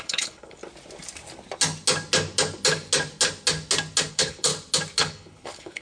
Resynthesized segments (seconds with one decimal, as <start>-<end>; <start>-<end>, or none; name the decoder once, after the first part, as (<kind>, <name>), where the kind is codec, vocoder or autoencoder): 0.0-0.6 (codec, HILCodec); 4.1-4.5; 5.0-5.8